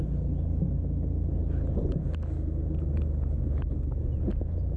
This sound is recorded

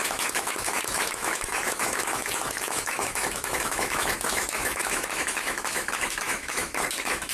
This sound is remade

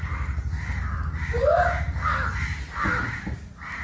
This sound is recorded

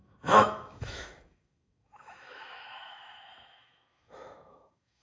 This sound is remade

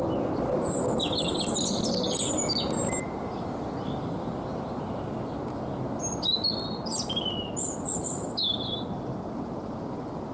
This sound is recorded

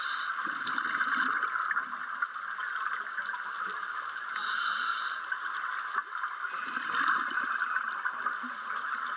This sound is recorded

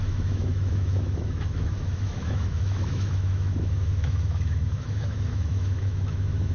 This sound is remade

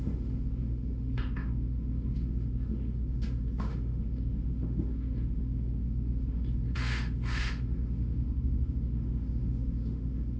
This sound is remade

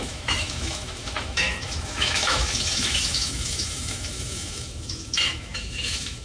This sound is remade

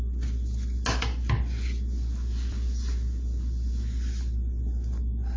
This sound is recorded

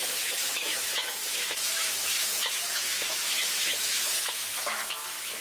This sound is remade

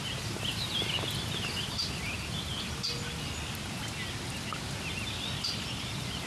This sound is recorded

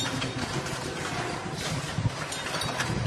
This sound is recorded